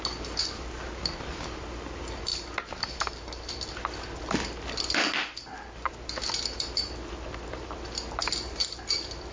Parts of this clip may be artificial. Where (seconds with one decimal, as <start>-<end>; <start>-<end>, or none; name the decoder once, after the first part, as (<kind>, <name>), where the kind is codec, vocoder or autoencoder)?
none